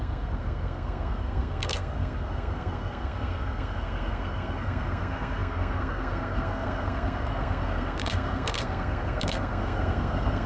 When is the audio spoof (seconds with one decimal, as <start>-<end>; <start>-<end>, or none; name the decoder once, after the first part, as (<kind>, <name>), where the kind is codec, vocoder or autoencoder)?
0.0-10.5 (codec, SNAC)